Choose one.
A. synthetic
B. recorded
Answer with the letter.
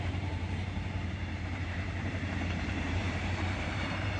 A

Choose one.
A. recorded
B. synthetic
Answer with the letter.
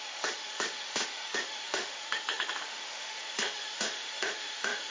B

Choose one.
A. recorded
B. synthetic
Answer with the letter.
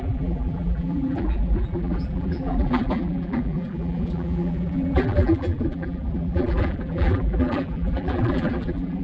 B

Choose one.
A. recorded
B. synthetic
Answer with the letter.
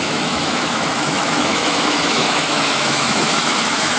B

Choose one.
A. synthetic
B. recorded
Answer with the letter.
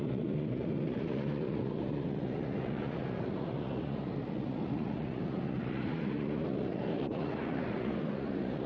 A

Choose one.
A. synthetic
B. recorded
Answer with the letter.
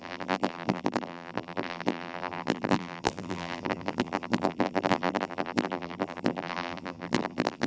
A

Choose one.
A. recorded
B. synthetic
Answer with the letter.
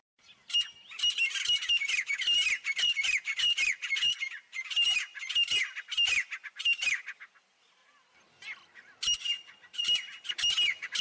A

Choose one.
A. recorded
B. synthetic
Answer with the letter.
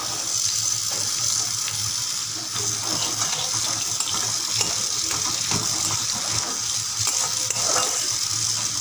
A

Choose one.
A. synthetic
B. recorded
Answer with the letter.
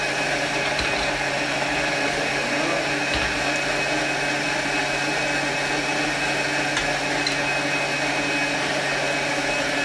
B